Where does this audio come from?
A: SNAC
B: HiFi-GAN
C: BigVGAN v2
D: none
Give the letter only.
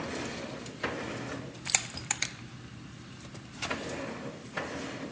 C